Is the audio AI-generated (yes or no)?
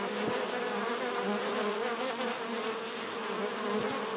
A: no